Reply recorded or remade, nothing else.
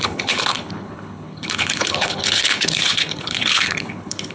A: remade